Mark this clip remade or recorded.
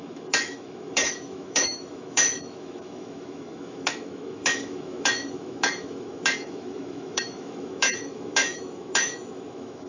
remade